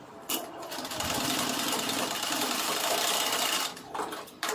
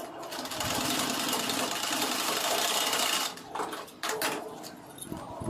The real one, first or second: second